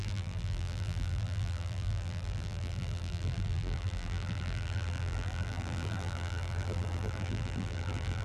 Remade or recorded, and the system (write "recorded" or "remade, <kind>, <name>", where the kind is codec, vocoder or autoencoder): remade, vocoder, BigVGAN v2